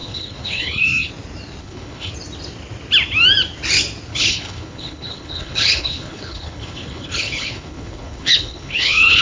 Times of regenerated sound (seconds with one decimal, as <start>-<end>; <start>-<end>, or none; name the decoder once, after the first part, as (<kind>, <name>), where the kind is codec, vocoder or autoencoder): 0.0-1.1 (codec, HILCodec); 1.6-2.1; 4.1-9.2